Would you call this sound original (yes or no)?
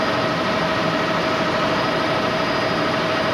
yes